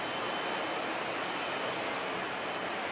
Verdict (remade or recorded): recorded